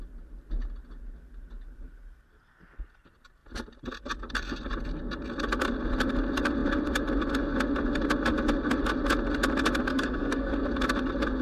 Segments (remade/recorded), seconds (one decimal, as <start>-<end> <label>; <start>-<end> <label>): 0.0-9.9 recorded; 9.9-10.5 remade; 10.5-11.4 recorded